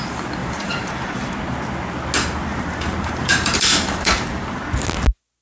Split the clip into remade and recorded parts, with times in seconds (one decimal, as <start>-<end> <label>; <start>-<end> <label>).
0.0-0.4 recorded; 0.4-1.3 remade; 1.3-2.5 recorded; 2.5-4.6 remade; 4.6-5.4 recorded